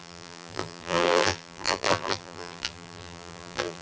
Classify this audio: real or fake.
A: fake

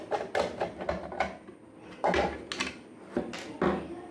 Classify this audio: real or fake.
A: real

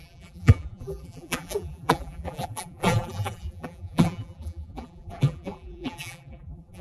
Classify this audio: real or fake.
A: fake